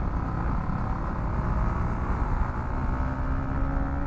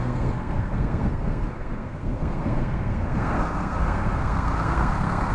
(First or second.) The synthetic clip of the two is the second